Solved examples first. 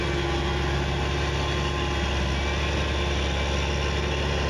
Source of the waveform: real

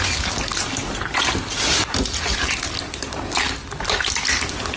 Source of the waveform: real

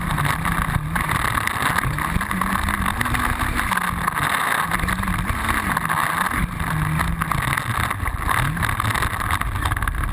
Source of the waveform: real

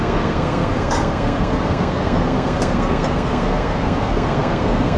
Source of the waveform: fake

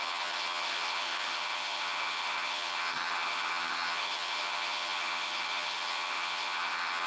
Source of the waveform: fake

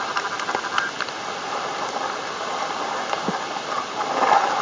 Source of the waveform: real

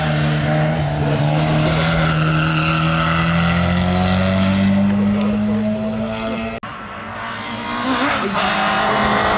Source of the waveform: real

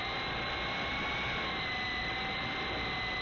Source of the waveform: real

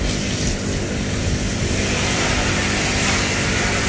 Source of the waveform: real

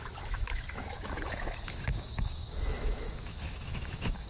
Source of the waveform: fake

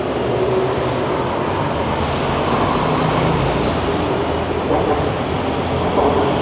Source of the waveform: real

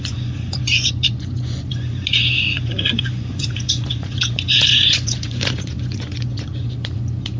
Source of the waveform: fake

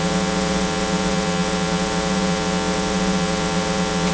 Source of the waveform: fake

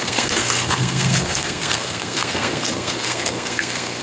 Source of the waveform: fake